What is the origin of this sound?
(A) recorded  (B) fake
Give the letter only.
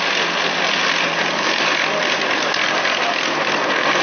A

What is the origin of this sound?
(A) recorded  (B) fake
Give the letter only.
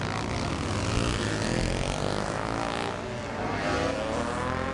A